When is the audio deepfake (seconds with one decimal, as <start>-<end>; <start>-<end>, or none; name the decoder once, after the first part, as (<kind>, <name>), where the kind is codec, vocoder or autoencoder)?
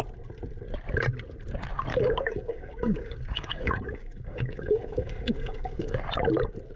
1.9-6.0 (codec, DAC)